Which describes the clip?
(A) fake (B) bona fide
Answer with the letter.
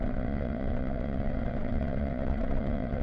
A